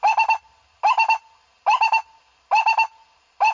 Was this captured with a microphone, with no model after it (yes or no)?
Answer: yes